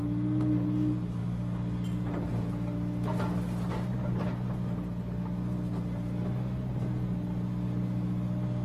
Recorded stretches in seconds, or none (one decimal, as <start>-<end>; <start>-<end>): 0.0-8.6